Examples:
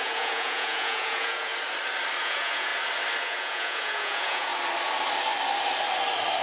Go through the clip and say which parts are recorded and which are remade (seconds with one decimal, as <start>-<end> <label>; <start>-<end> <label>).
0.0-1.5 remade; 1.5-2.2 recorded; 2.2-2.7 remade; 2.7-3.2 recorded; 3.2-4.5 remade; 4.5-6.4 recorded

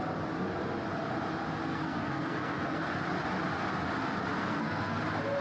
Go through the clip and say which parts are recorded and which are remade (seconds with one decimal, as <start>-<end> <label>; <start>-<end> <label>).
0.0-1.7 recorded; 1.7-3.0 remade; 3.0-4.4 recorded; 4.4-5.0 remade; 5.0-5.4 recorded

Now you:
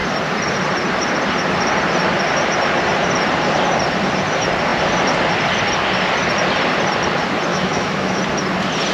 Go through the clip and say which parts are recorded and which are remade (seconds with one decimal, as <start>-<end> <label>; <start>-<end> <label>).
0.0-7.5 recorded; 7.5-8.2 remade; 8.2-8.9 recorded

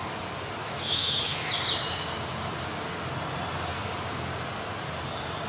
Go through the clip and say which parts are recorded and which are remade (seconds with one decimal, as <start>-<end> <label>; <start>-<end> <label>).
0.0-0.6 recorded; 0.6-1.5 remade; 1.5-5.5 recorded

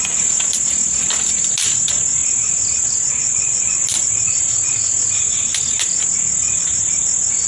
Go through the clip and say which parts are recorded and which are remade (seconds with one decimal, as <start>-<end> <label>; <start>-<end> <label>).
0.0-3.2 recorded; 3.2-3.8 remade; 3.8-7.5 recorded